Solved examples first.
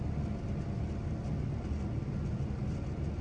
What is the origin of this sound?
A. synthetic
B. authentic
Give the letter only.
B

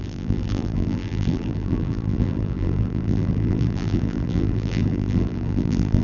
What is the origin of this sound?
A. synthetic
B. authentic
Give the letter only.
A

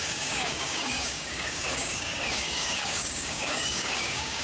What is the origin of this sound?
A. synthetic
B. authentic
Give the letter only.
A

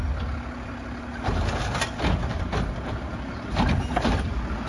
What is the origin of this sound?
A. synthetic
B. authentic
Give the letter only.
B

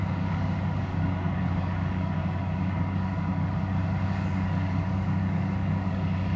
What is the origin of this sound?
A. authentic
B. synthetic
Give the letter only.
B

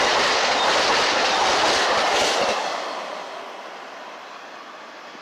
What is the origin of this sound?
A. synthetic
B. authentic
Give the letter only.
B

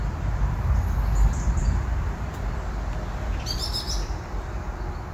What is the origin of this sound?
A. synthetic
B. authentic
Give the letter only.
A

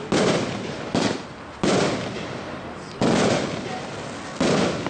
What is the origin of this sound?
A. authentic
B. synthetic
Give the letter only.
A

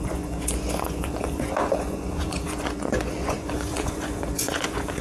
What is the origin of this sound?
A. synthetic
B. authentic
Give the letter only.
A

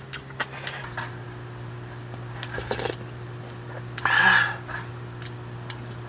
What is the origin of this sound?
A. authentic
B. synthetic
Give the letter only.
A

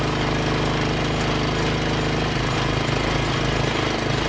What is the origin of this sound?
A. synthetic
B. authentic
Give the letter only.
B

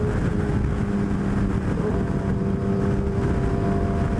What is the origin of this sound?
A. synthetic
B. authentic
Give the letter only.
B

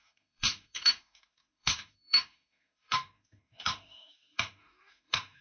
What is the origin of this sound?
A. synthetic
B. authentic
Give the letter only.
A